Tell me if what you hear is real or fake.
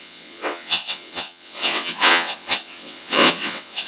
fake